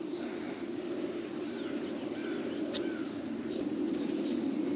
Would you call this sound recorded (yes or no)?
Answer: yes